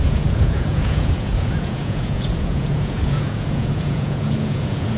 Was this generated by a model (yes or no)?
yes